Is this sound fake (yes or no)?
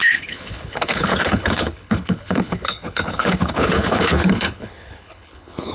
yes